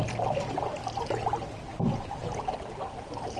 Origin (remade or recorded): recorded